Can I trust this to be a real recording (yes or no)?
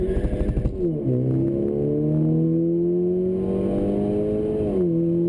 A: yes